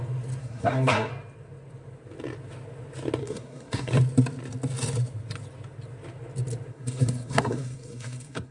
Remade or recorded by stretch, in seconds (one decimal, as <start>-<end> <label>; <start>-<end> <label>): 0.0-0.4 recorded; 0.4-1.1 remade; 1.1-3.2 recorded; 3.2-3.9 remade; 3.9-6.7 recorded; 6.7-8.5 remade